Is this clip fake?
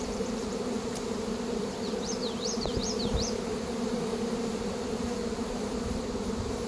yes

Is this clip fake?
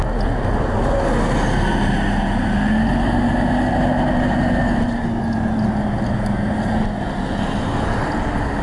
no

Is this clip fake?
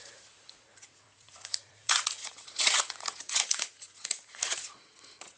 yes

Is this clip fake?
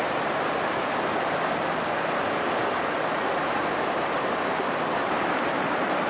no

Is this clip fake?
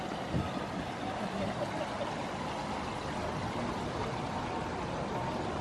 no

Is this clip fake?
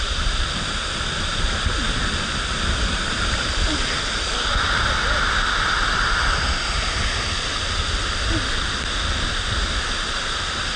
no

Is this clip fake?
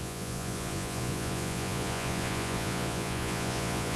yes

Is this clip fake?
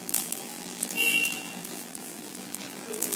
yes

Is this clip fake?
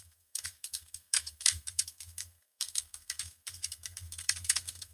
yes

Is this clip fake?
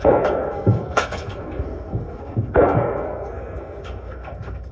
yes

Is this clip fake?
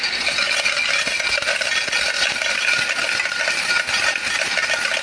no